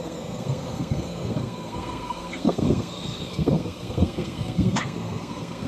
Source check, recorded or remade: remade